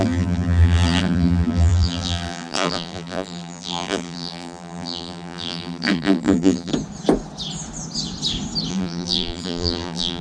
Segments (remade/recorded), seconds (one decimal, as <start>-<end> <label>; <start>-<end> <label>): 0.0-6.7 remade; 6.7-8.7 recorded; 8.7-10.2 remade